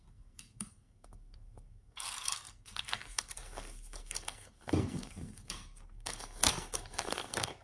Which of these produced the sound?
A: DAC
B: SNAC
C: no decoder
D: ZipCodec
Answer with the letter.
B